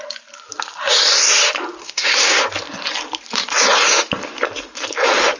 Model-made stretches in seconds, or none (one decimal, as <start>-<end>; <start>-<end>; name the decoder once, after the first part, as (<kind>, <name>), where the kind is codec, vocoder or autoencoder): 1.8-2.4 (codec, SNAC)